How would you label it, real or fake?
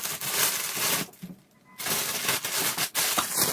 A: real